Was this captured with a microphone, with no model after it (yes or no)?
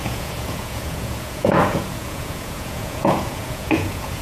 no